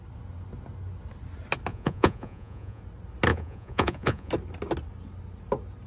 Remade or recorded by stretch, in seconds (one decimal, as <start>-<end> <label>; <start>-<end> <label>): 0.0-1.7 recorded; 1.7-2.8 remade; 2.8-3.3 recorded; 3.3-4.3 remade; 4.3-5.9 recorded